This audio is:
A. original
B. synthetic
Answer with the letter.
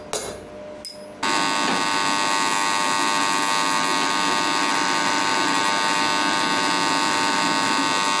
A